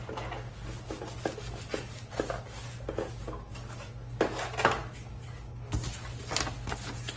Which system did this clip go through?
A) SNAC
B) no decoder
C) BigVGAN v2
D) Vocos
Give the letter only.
B